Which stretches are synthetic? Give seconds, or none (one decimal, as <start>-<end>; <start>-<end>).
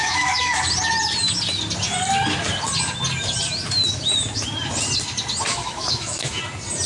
0.0-0.6; 5.5-6.4